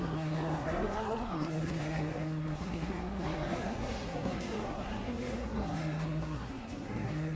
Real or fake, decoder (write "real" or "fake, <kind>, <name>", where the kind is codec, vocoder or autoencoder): fake, codec, SNAC